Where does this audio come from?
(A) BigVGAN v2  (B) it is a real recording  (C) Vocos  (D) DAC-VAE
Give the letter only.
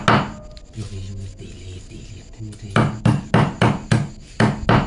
B